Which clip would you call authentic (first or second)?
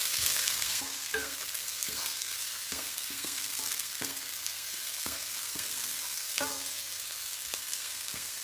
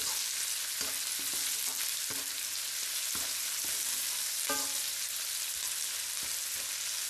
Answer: second